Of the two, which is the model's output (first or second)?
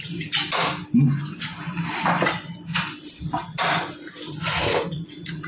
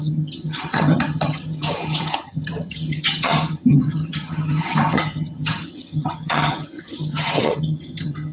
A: second